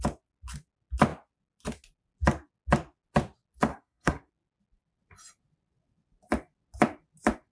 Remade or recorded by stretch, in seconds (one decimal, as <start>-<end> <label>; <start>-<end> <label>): 0.0-3.7 recorded; 3.7-4.3 remade; 4.3-7.5 recorded